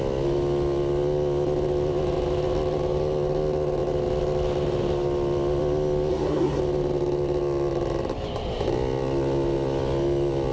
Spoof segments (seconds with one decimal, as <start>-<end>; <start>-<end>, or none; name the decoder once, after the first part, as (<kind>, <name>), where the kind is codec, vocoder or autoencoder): 6.1-6.6 (codec, SNAC)